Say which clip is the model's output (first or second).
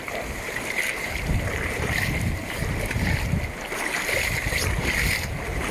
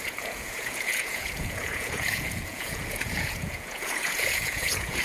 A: second